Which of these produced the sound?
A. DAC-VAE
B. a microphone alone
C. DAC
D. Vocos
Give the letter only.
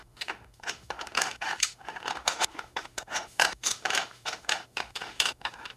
A